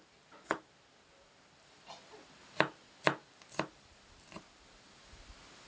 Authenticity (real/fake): real